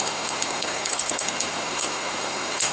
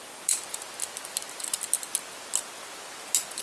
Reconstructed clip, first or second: first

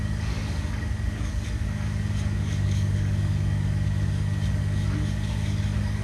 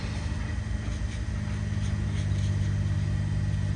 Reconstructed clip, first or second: first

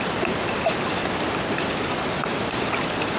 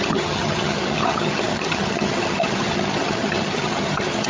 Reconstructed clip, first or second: second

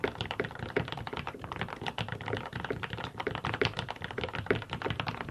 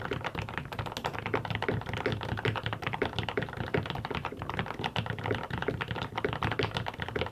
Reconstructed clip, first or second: first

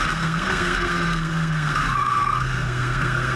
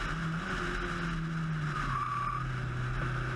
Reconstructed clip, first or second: first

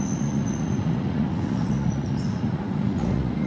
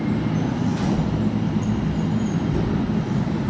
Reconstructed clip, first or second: first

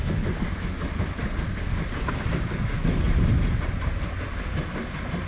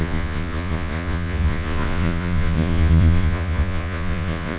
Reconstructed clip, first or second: second